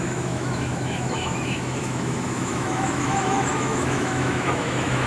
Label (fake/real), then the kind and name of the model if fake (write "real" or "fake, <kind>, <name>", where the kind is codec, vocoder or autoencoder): fake, autoencoder, DAC-VAE